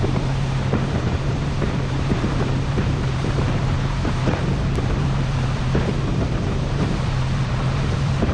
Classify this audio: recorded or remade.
remade